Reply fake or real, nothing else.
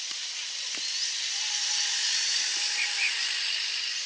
real